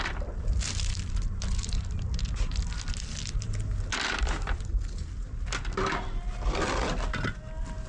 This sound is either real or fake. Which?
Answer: real